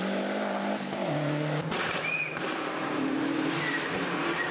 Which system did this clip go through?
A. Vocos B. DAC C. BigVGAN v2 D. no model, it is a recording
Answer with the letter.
C